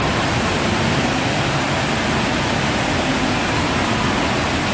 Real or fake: fake